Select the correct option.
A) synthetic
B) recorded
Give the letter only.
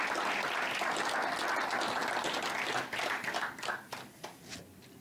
B